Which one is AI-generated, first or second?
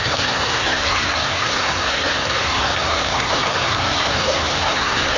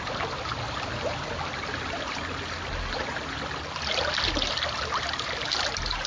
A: first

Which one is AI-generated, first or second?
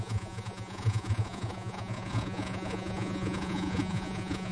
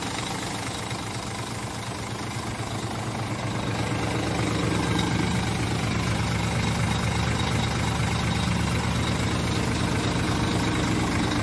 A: first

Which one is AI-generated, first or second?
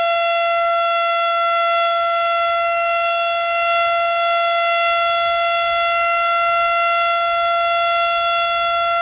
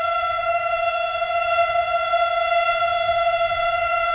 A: second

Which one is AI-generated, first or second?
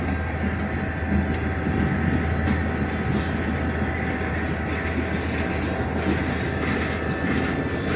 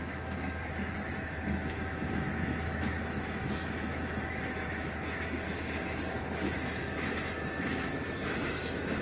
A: second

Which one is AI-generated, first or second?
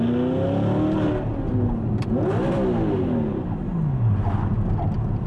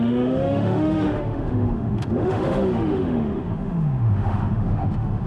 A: second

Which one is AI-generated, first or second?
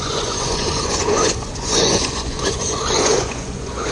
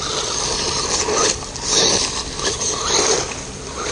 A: first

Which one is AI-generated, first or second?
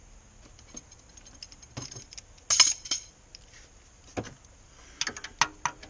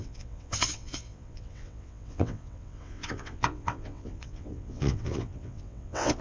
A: second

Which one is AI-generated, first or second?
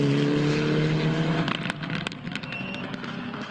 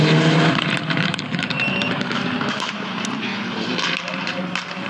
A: second